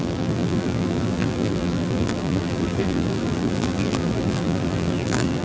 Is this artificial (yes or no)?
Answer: yes